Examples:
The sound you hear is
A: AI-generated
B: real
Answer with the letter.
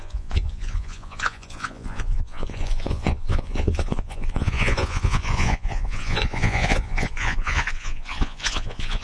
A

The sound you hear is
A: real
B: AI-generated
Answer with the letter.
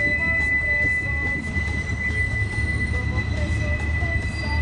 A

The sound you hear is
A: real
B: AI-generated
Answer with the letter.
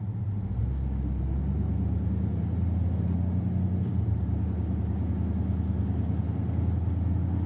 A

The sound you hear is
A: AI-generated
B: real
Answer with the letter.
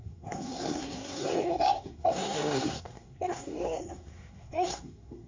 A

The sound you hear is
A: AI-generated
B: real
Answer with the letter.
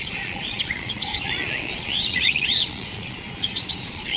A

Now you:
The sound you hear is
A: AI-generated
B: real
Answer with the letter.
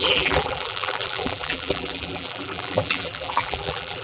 A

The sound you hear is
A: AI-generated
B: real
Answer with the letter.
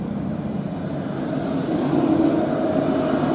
B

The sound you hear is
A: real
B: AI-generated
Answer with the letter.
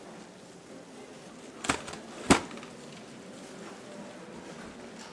A